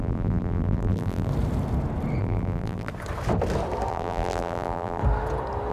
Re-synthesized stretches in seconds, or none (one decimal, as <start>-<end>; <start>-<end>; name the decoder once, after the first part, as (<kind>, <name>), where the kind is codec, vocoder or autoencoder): 0.0-1.3 (vocoder, BigVGAN v2); 2.2-2.9; 3.9-5.0